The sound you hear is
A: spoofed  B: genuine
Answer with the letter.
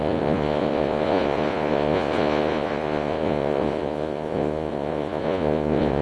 A